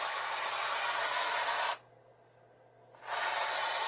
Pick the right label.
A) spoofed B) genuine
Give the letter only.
B